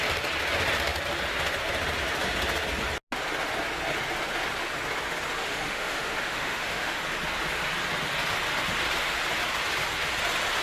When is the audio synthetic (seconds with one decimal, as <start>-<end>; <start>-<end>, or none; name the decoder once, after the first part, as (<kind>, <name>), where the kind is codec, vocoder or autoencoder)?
5.4-7.0 (autoencoder, DAC-VAE)